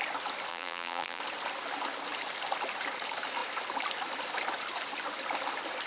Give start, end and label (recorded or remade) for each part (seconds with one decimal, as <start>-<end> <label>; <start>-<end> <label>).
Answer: 0.0-0.5 recorded; 0.5-1.2 remade; 1.2-5.9 recorded